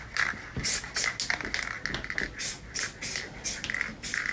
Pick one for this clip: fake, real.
real